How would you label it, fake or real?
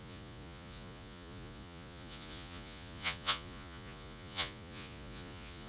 fake